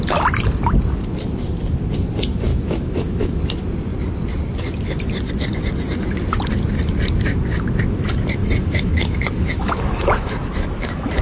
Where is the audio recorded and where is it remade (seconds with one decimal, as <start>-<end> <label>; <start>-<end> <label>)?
0.0-2.5 recorded; 2.5-3.4 remade; 3.4-8.4 recorded; 8.4-11.2 remade